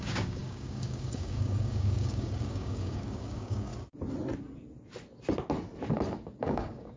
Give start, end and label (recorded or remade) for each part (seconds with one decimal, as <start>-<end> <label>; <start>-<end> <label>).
0.0-3.7 remade; 3.7-6.4 recorded; 6.4-7.0 remade